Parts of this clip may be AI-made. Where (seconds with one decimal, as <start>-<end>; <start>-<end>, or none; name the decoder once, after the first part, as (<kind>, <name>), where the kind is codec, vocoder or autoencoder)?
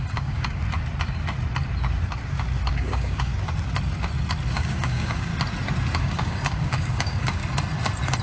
0.0-0.6 (codec, DAC); 2.7-3.3; 4.5-5.3; 6.0-7.4